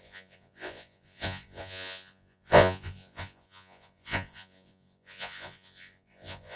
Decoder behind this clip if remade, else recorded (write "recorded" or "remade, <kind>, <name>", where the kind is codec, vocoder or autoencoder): remade, vocoder, Vocos